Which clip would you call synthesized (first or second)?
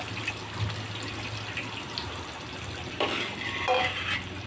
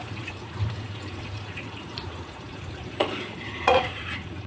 second